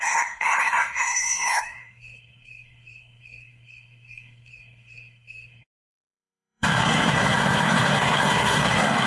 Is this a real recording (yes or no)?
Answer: no